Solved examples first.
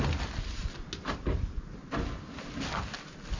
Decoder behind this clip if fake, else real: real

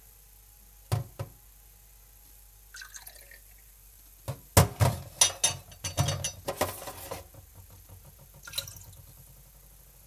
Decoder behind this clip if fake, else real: real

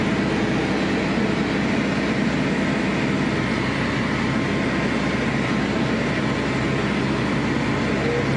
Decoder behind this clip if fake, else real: real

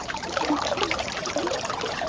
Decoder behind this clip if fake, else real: fake, vocoder, BigVGAN v2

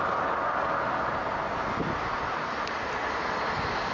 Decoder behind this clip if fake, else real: real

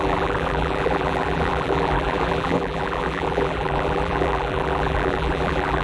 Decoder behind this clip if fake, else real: fake, vocoder, BigVGAN v2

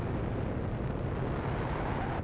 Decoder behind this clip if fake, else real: real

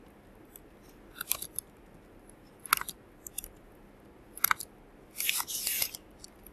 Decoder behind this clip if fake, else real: real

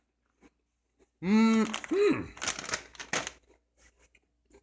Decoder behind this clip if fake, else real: real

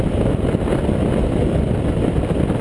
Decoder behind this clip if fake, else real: fake, vocoder, BigVGAN v2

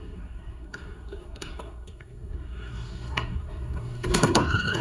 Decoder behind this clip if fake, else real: fake, codec, SNAC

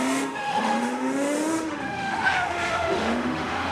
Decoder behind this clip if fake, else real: fake, autoencoder, DAC-VAE